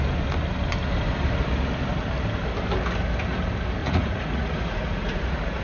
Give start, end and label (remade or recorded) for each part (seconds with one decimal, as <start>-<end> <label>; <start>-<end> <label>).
0.0-3.8 recorded; 3.8-5.6 remade